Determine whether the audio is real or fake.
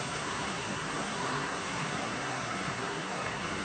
fake